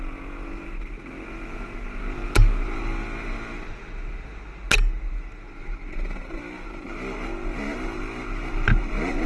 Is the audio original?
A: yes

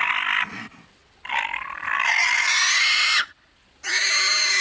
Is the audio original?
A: yes